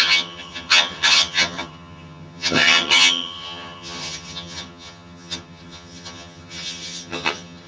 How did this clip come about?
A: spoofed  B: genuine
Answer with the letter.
A